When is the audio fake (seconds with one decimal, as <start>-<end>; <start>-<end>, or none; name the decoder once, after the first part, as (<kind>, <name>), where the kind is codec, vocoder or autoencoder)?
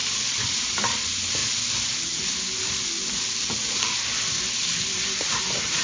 0.6-1.4 (vocoder, BigVGAN v2); 4.9-5.8